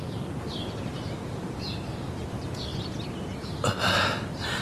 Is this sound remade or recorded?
recorded